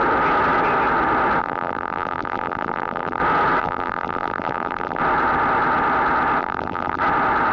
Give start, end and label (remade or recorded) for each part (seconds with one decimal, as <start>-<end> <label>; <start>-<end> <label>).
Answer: 0.0-1.4 recorded; 1.4-3.2 remade; 3.2-3.6 recorded; 3.6-5.0 remade; 5.0-6.4 recorded; 6.4-7.0 remade; 7.0-7.5 recorded